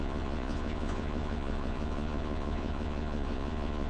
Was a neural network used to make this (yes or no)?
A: yes